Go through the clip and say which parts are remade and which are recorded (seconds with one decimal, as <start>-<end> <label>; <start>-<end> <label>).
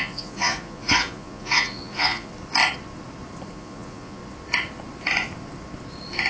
0.0-2.3 remade; 2.3-3.5 recorded; 3.5-4.2 remade; 4.2-6.3 recorded